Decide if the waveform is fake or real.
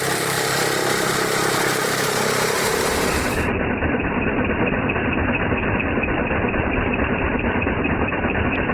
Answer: fake